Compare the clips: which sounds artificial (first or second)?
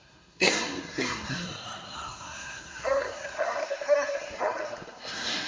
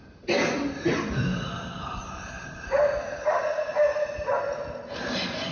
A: first